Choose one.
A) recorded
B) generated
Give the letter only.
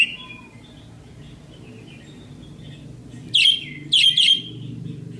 A